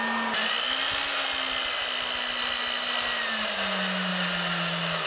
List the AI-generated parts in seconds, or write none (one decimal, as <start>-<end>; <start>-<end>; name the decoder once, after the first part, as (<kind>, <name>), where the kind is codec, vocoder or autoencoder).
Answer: none